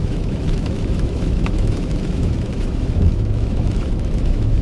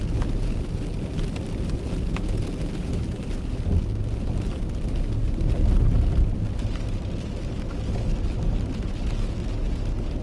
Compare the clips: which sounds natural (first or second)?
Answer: second